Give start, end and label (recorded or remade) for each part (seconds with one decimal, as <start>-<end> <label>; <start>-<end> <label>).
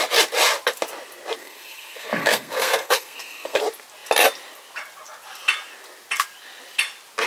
0.0-1.4 recorded; 1.4-3.6 remade; 3.6-7.3 recorded